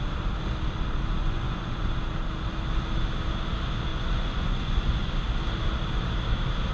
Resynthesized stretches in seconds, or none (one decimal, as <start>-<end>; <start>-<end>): 1.2-1.9; 3.9-5.1